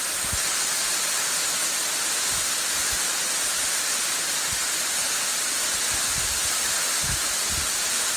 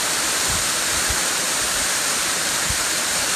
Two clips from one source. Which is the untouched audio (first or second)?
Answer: first